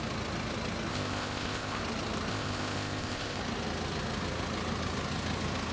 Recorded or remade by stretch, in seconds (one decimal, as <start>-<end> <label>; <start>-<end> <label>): 0.0-0.9 recorded; 0.9-1.8 remade; 1.8-2.3 recorded; 2.3-3.4 remade; 3.4-5.7 recorded